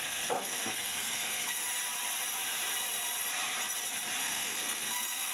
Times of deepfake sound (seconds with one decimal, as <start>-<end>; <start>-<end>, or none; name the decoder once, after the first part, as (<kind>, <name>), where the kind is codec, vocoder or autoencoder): 0.0-1.6 (codec, SNAC); 4.2-5.3